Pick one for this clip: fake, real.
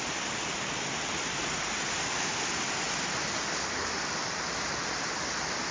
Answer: real